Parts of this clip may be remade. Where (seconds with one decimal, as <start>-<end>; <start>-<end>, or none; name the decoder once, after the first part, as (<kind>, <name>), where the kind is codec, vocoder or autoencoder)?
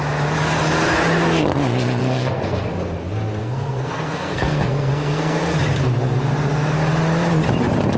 2.0-2.8 (codec, SNAC); 3.4-5.4